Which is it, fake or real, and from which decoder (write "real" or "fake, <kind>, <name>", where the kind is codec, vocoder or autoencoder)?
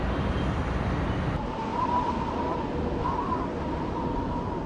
real